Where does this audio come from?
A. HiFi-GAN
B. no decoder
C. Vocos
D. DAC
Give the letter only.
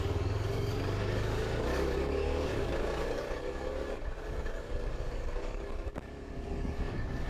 D